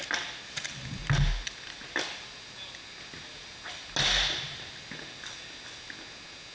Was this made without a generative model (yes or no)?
yes